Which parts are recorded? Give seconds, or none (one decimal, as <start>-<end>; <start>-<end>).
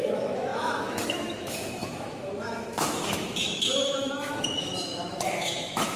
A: none